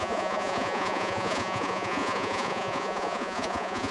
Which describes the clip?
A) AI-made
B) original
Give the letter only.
A